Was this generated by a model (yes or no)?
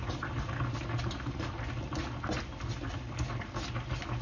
no